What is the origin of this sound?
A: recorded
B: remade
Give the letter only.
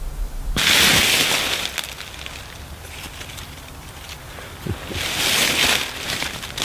A